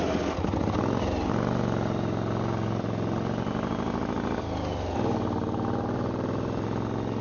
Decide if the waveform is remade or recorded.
recorded